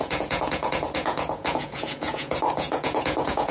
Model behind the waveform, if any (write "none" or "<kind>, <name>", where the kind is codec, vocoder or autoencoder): vocoder, Vocos